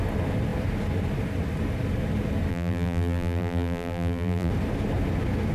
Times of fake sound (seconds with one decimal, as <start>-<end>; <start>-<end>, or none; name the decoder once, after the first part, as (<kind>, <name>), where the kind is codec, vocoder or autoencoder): 2.5-4.5 (vocoder, BigVGAN v2)